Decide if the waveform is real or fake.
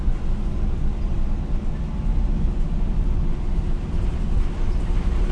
real